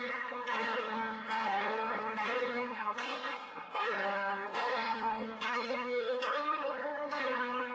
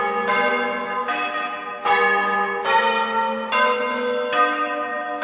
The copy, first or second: first